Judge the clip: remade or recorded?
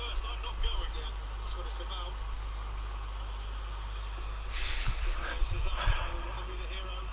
recorded